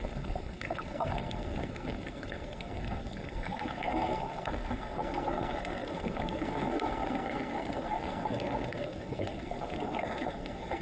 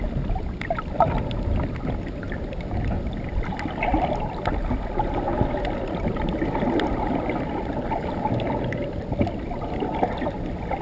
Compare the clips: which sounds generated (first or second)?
first